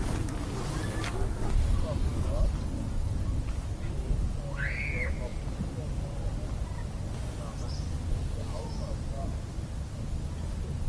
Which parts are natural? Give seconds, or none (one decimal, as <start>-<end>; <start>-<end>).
0.0-10.9